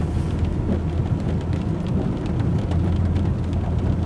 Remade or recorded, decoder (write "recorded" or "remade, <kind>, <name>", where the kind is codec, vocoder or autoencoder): recorded